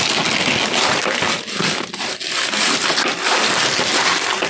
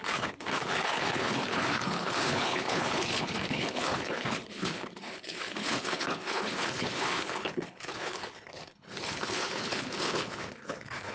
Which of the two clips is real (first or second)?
first